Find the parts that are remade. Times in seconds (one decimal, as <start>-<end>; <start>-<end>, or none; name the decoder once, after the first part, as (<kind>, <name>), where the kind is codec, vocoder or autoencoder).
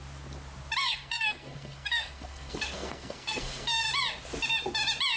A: 0.8-3.9 (codec, SNAC)